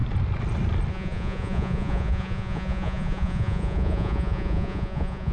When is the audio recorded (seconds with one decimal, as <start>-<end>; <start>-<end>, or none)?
0.0-0.9